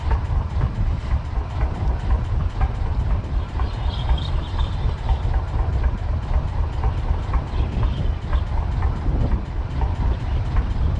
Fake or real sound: fake